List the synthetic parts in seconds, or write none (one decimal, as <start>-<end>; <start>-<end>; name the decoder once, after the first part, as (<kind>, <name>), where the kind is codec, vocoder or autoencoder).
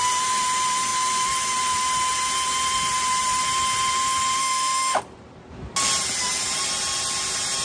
4.4-5.0 (autoencoder, DAC-VAE)